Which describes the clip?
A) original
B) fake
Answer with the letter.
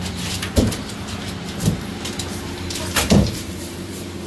B